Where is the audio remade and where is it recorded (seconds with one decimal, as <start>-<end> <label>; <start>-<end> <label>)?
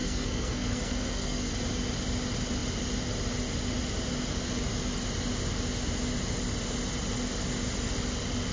0.0-1.5 remade; 1.5-8.5 recorded